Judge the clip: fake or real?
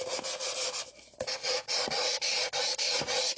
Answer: real